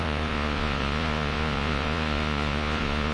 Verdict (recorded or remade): remade